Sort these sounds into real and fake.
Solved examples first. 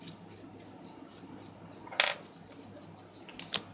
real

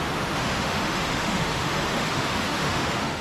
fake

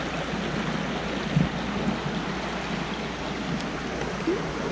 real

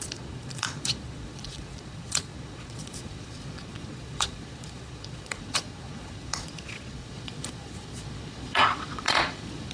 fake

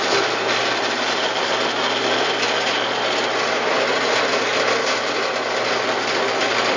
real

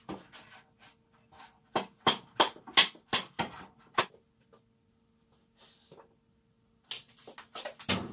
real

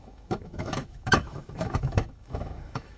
fake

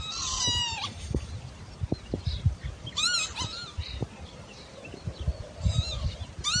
real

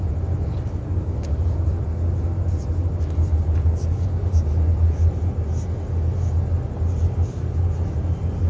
real